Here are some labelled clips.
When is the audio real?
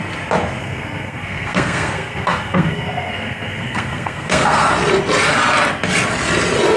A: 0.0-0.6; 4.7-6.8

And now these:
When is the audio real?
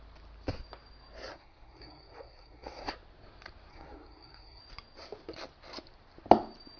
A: 0.0-1.3; 2.9-3.7; 4.6-6.8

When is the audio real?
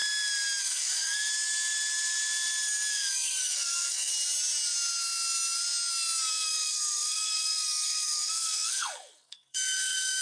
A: 0.0-0.6; 1.3-2.9; 4.1-6.3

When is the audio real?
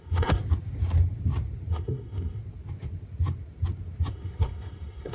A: 0.4-1.7; 2.4-4.1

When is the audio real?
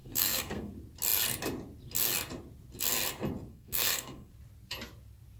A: 0.7-3.5; 4.3-5.4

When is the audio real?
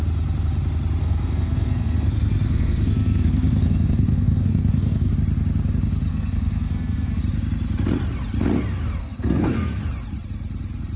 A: 0.0-1.0; 5.1-6.1; 7.2-9.0; 9.8-11.0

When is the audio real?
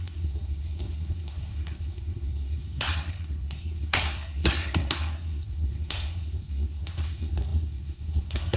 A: none